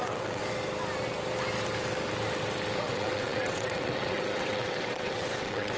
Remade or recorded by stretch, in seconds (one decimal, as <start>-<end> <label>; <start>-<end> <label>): 0.0-0.4 remade; 0.4-2.8 recorded; 2.8-5.8 remade